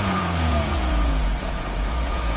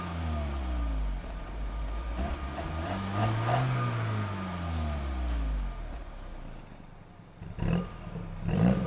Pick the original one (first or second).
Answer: second